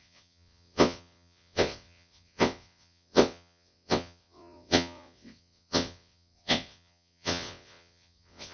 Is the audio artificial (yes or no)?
yes